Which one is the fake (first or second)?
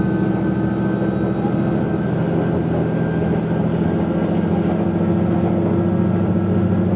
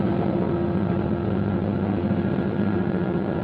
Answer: second